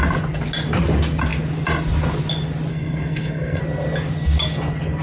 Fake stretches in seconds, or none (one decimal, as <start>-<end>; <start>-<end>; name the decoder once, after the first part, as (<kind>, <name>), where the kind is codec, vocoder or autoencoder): 2.7-3.6 (codec, SNAC)